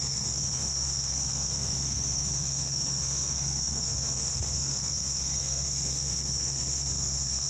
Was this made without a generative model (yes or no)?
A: no